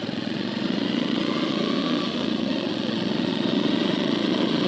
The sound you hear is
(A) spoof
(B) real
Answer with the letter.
A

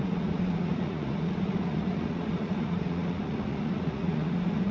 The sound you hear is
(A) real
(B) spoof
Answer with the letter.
B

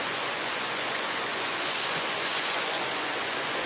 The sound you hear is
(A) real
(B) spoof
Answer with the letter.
B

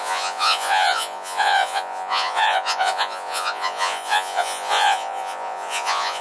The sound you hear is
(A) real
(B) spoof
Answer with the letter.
B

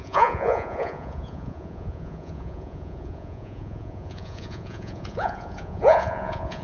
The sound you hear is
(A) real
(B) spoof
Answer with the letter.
B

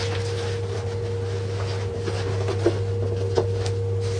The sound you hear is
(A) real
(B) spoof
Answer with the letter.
A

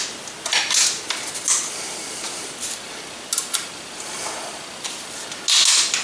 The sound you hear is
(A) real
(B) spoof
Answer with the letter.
A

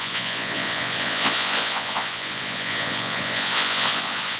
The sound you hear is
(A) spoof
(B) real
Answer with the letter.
A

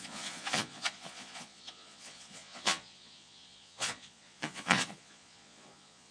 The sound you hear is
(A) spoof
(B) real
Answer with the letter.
A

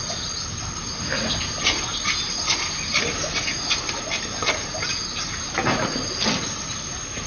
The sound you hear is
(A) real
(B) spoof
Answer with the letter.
A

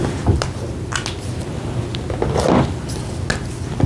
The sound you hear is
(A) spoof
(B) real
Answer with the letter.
B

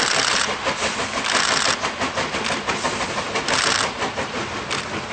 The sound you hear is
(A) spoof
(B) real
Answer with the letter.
B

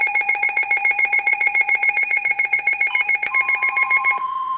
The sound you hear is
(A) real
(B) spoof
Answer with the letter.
B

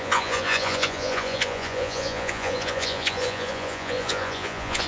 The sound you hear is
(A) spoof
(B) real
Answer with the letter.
A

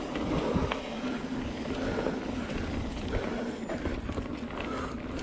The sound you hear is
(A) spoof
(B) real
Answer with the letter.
B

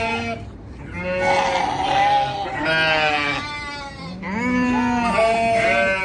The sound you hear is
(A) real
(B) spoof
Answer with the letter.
A